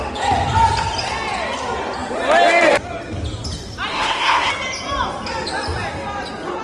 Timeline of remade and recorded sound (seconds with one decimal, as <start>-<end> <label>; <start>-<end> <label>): 0.0-3.9 recorded; 3.9-4.5 remade; 4.5-6.6 recorded